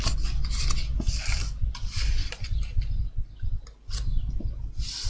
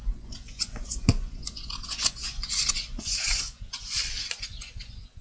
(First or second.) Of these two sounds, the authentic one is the first